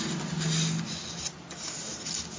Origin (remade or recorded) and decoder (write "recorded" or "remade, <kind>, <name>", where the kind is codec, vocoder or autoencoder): remade, vocoder, BigVGAN v2